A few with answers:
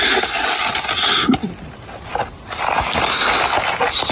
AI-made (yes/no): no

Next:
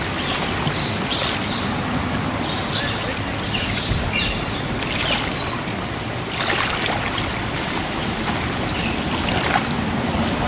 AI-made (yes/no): no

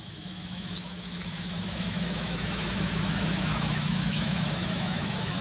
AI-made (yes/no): yes